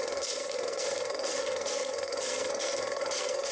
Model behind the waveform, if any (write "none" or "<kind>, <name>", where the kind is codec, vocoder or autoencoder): codec, SNAC